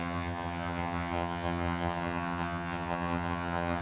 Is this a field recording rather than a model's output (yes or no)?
no